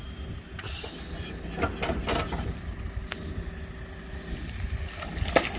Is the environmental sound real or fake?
real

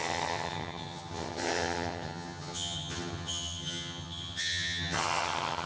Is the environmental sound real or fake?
fake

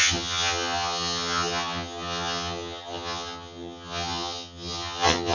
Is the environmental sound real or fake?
fake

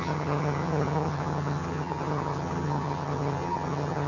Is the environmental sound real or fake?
fake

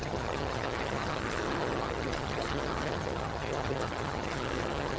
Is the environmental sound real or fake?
fake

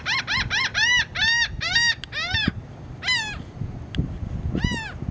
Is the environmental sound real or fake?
real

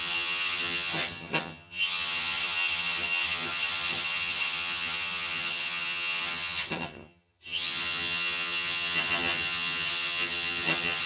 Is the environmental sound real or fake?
fake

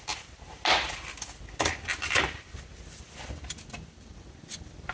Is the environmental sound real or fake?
real